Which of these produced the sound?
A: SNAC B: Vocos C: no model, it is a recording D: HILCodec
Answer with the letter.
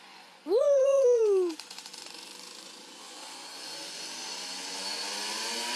B